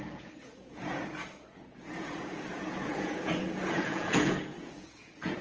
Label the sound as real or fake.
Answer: fake